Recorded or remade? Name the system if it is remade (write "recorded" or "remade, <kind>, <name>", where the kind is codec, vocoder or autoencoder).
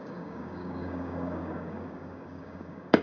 remade, codec, DAC